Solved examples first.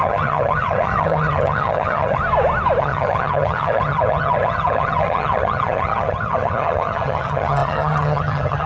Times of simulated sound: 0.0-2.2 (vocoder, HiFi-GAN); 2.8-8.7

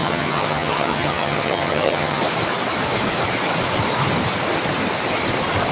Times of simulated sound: 0.0-2.2 (vocoder, HiFi-GAN)

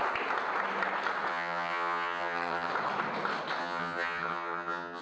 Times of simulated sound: 1.3-2.7 (vocoder, HiFi-GAN); 3.6-5.0

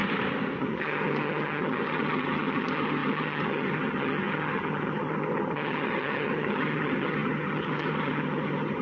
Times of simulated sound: 0.6-8.8 (vocoder, HiFi-GAN)

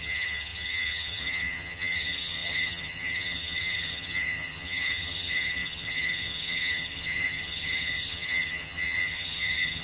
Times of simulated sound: 0.0-9.8 (vocoder, HiFi-GAN)

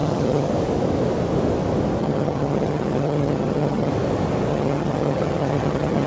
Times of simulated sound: 0.0-0.5 (vocoder, HiFi-GAN); 2.0-3.9; 4.5-6.1

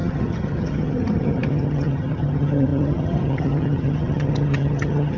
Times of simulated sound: 0.0-5.2 (vocoder, HiFi-GAN)

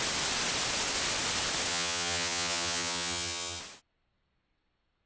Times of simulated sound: 1.7-3.6 (vocoder, HiFi-GAN)